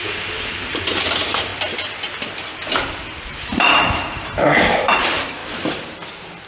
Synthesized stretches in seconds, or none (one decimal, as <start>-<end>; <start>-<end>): 0.0-1.5; 3.2-5.4; 6.1-6.5